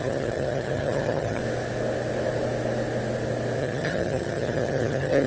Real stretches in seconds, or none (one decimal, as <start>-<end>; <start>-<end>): 1.4-3.6